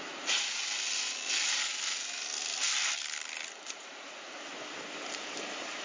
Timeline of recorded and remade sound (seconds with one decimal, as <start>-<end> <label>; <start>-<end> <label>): 0.0-0.6 remade; 0.6-3.7 recorded; 3.7-4.5 remade; 4.5-5.8 recorded